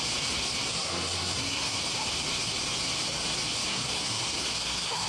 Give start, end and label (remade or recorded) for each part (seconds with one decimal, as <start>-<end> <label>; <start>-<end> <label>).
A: 0.0-0.7 recorded; 0.7-1.8 remade; 1.8-3.7 recorded; 3.7-5.1 remade

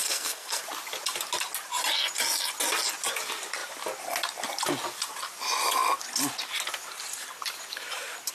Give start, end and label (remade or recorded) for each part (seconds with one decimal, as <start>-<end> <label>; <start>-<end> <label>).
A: 0.0-0.6 remade; 0.6-8.3 recorded

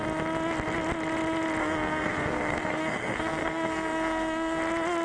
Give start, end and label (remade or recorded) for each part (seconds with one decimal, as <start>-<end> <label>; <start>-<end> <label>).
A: 0.0-1.6 recorded; 1.6-4.6 remade; 4.6-5.0 recorded

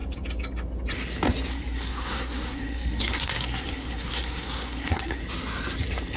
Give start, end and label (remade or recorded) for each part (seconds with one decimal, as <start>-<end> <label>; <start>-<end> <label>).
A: 0.0-1.5 recorded; 1.5-5.2 remade; 5.2-6.2 recorded

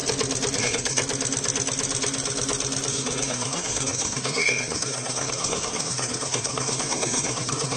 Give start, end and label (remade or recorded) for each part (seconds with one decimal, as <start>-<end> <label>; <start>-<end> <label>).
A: 0.0-0.6 recorded; 0.6-1.0 remade; 1.0-2.9 recorded; 2.9-7.8 remade

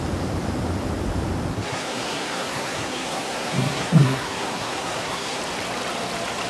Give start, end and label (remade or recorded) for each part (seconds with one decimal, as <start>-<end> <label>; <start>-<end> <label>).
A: 0.0-1.5 recorded; 1.5-5.4 remade; 5.4-6.5 recorded

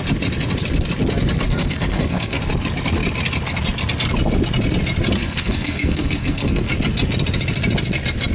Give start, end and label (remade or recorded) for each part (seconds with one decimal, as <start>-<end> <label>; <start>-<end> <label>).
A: 0.0-1.5 recorded; 1.5-2.4 remade; 2.4-5.2 recorded; 5.2-6.7 remade; 6.7-8.3 recorded

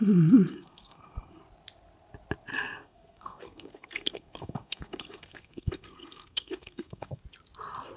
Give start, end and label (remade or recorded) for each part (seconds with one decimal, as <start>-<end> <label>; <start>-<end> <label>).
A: 0.0-0.5 recorded; 0.5-1.4 remade; 1.4-2.5 recorded; 2.5-7.2 remade; 7.2-8.0 recorded